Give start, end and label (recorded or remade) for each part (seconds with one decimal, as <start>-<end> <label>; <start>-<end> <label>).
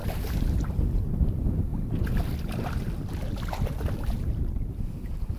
0.0-1.7 remade; 1.7-3.9 recorded; 3.9-5.4 remade